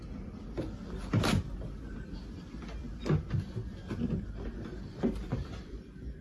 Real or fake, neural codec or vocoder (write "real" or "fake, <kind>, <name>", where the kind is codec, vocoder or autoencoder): real